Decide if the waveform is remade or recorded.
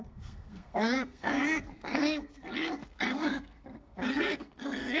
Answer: remade